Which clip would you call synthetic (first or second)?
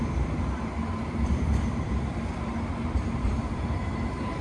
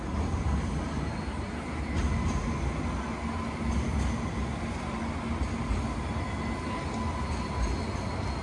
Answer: first